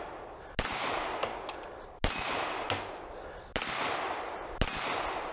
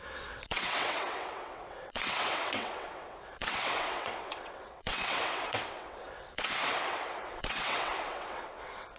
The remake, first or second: second